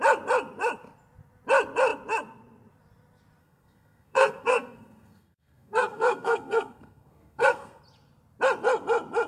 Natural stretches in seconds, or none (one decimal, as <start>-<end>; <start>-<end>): 0.0-3.4; 7.8-9.3